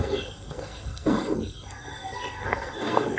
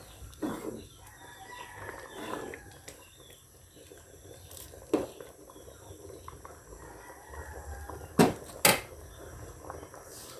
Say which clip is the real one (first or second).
second